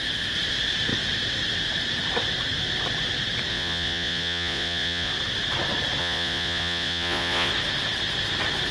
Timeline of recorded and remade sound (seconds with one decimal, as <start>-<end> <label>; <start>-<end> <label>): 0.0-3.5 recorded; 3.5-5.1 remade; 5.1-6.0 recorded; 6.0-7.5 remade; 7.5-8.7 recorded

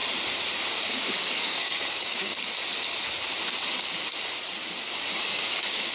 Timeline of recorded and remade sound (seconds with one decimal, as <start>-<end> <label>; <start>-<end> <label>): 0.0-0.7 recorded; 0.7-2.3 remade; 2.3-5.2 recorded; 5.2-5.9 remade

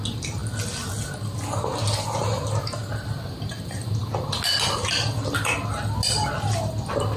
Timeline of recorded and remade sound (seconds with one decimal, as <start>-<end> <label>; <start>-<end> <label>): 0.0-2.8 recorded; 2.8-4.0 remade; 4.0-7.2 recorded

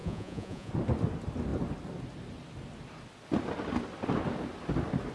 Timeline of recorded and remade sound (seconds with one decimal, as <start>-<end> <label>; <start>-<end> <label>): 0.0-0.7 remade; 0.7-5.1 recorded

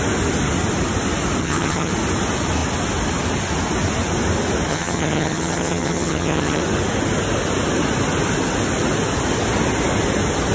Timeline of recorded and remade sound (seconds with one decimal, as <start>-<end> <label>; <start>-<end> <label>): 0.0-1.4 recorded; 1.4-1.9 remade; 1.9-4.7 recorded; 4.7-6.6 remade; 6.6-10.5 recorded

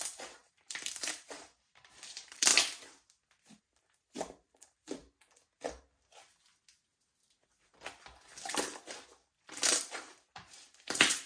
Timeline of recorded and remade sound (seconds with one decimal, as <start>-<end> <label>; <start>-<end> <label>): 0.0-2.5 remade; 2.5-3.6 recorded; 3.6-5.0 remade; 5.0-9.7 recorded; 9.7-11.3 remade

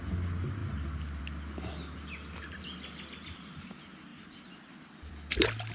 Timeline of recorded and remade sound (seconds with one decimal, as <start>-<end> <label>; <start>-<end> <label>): 0.0-5.7 recorded

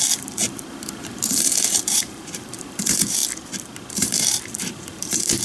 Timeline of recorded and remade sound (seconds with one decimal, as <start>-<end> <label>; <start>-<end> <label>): 0.0-3.2 remade; 3.2-3.9 recorded; 3.9-5.4 remade